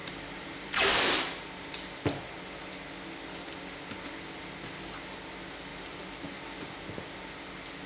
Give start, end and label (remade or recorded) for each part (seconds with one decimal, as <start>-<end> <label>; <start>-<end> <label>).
0.0-1.4 remade; 1.4-5.7 recorded; 5.7-6.4 remade; 6.4-7.9 recorded